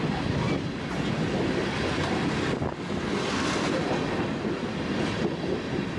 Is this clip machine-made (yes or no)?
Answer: no